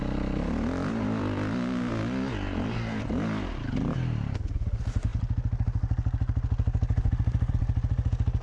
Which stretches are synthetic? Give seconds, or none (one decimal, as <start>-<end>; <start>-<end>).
none